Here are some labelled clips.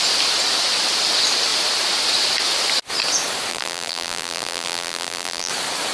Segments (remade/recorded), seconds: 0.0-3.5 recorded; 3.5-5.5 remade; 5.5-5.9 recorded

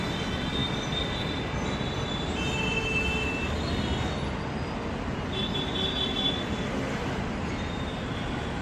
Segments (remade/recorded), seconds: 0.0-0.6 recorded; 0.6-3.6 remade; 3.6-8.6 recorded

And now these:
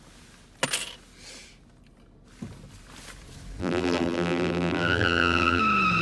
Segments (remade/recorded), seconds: 0.0-3.6 recorded; 3.6-5.6 remade; 5.6-6.0 recorded

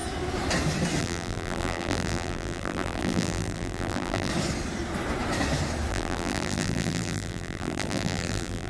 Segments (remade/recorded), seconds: 0.0-1.0 recorded; 1.0-4.3 remade; 4.3-5.9 recorded; 5.9-8.7 remade

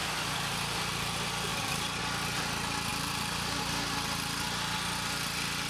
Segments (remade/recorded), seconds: 0.0-0.9 remade; 0.9-1.5 recorded; 1.5-2.0 remade; 2.0-2.9 recorded; 2.9-3.6 remade; 3.6-5.7 recorded